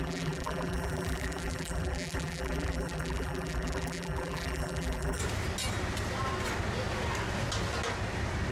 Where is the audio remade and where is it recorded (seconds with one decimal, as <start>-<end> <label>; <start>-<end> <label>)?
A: 0.0-5.2 remade; 5.2-8.5 recorded